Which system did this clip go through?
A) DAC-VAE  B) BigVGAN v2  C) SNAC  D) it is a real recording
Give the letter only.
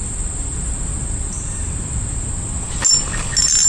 D